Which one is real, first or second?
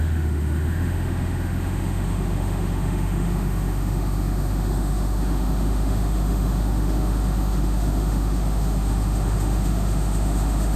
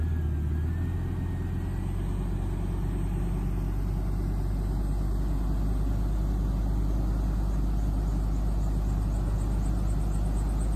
second